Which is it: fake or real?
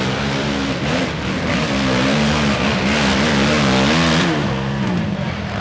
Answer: real